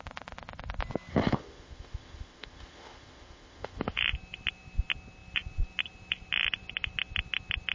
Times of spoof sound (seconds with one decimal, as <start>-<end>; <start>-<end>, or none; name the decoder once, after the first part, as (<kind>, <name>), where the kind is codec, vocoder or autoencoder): 1.1-4.0 (autoencoder, DAC-VAE)